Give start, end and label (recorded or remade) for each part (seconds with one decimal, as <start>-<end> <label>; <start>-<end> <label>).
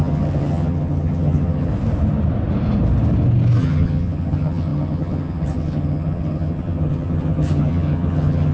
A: 0.0-1.7 remade; 1.7-3.6 recorded; 3.6-8.5 remade